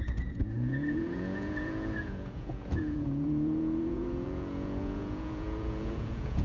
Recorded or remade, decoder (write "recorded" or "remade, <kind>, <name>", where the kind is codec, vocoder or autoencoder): remade, vocoder, Vocos